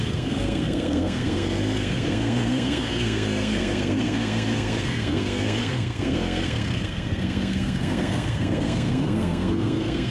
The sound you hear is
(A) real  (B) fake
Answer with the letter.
B